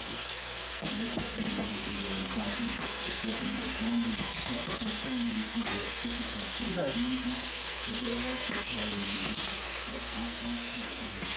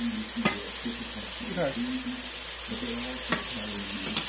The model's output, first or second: first